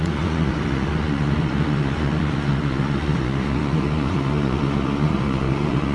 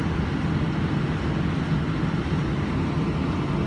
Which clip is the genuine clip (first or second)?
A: second